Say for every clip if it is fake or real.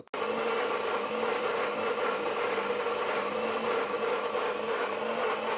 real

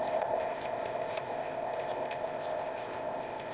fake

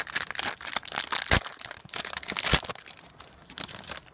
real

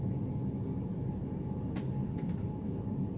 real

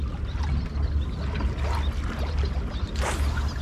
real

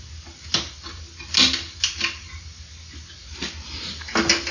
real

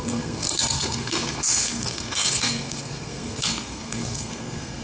fake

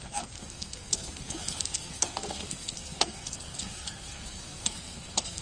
fake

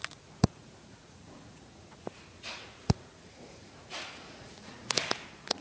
fake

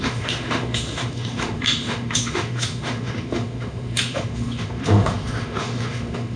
fake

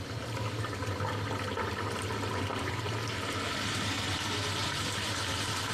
real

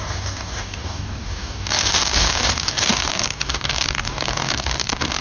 fake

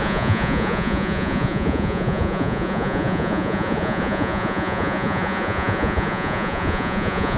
fake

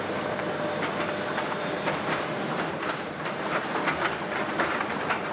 real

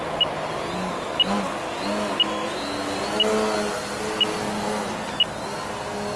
real